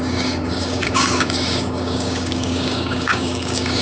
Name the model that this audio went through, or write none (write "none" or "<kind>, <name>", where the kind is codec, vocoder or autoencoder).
codec, DAC